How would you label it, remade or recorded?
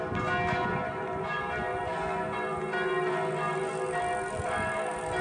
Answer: recorded